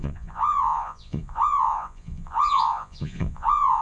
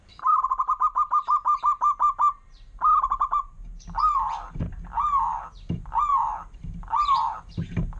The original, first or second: second